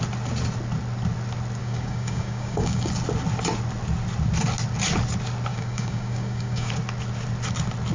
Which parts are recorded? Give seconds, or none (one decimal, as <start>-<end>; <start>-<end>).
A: 0.0-1.6; 2.9-5.5; 6.7-7.9